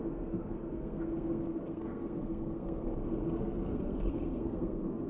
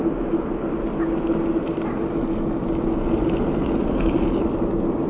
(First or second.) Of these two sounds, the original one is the second